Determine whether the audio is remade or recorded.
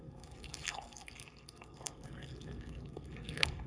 remade